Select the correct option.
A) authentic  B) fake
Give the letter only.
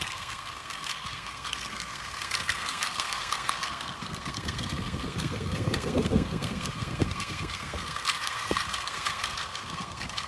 B